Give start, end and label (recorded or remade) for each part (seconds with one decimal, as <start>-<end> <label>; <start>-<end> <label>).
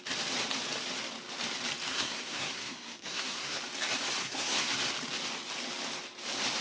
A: 0.0-1.9 recorded; 1.9-3.6 remade; 3.6-4.2 recorded; 4.2-4.7 remade; 4.7-6.6 recorded